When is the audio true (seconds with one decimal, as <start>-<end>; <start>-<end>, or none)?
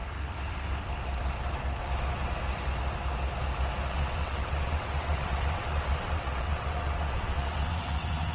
0.0-3.9